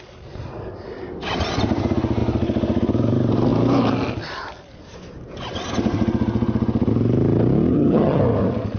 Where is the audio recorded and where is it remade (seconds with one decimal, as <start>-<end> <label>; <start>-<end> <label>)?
0.0-7.7 recorded; 7.7-8.2 remade; 8.2-8.8 recorded